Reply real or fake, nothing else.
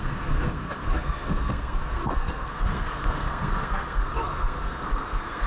fake